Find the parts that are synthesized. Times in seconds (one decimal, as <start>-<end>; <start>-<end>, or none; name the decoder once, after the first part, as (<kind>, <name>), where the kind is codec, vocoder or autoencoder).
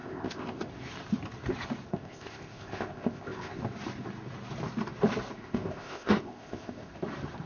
0.0-0.7 (codec, ZipCodec); 1.9-3.6; 5.4-6.9